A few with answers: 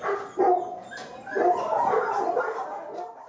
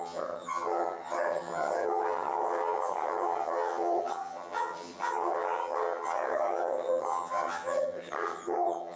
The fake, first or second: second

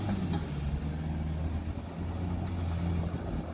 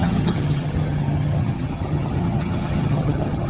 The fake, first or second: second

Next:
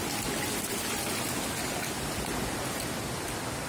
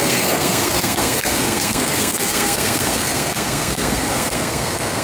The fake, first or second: second